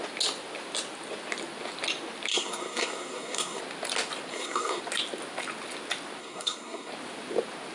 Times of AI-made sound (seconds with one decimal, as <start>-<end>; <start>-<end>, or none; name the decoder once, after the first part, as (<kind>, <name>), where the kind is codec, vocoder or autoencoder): 2.3-3.6 (codec, SNAC); 4.3-4.8; 6.2-6.9